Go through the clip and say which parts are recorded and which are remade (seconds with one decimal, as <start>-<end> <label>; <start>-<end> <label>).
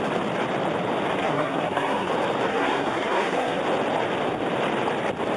0.0-1.2 recorded; 1.2-2.1 remade; 2.1-2.5 recorded; 2.5-3.6 remade; 3.6-5.4 recorded